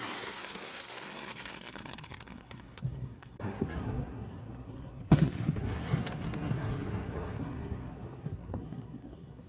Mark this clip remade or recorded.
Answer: remade